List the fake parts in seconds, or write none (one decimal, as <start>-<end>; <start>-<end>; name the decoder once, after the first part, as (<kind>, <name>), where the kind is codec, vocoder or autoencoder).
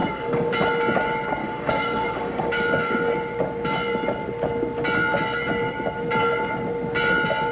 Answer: 0.0-0.5 (codec, DAC); 1.4-3.1